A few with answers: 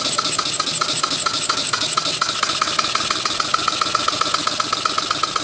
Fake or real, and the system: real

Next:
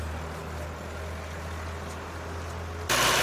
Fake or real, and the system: real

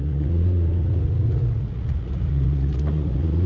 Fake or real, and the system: fake, vocoder, Vocos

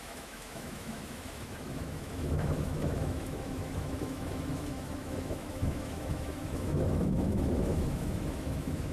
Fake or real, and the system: fake, autoencoder, DAC-VAE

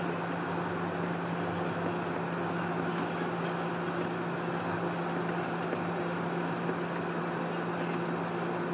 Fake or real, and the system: real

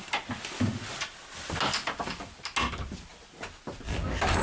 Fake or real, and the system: real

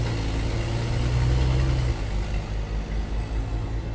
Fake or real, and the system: real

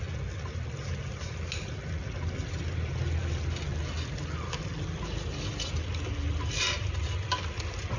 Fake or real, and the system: real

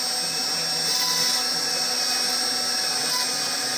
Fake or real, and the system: real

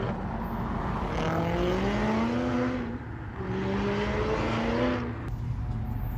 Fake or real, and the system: real